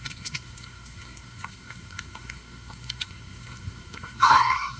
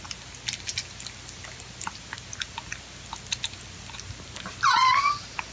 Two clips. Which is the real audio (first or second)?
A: second